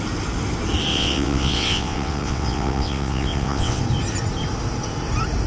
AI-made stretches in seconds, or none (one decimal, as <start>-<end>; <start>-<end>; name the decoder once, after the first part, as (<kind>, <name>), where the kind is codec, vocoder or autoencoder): 0.9-3.8 (vocoder, WaveNeXt)